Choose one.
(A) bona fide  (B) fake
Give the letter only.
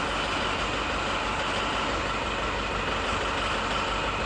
A